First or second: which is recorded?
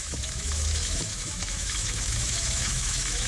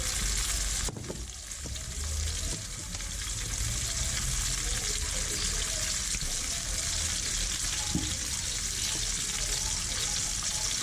second